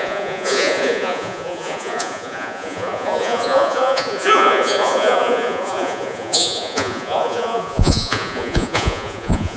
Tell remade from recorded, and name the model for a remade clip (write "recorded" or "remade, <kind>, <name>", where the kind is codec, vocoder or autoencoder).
remade, vocoder, Vocos